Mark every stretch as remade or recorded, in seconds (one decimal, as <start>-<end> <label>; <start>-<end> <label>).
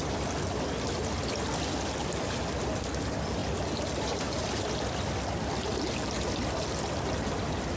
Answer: 0.0-7.8 recorded